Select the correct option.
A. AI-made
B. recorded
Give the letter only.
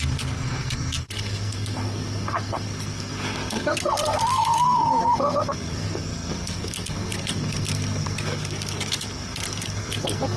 A